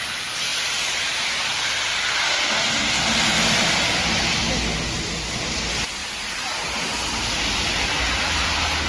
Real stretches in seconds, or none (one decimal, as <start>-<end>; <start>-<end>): 0.0-8.9